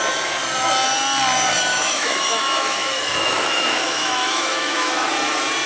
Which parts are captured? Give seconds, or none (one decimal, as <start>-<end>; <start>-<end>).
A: 0.0-1.7; 5.1-5.7